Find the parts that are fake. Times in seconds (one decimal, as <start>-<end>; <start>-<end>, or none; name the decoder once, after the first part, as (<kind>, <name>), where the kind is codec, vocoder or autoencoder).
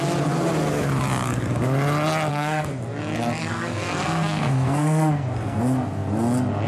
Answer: 2.3-2.8 (codec, SNAC); 3.4-5.6